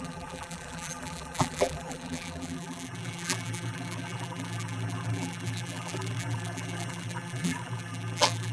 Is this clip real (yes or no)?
no